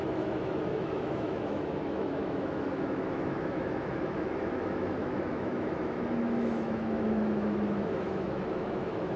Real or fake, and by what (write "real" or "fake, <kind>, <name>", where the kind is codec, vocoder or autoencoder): fake, autoencoder, DAC-VAE